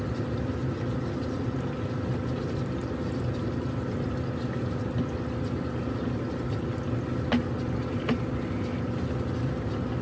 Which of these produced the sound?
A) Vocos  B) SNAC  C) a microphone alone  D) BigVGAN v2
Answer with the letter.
C